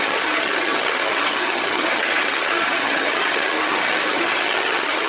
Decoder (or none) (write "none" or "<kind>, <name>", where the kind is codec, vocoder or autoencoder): vocoder, HiFi-GAN